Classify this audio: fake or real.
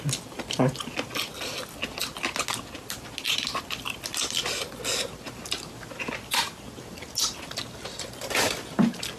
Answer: real